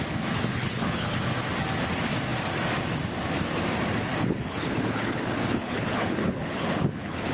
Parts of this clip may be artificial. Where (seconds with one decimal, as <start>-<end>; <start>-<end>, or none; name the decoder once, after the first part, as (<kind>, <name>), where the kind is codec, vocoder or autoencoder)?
0.5-1.2 (codec, HILCodec); 4.1-7.3